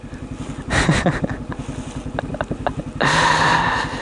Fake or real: real